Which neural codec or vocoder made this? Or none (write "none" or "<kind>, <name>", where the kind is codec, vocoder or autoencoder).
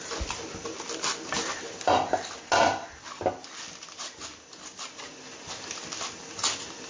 none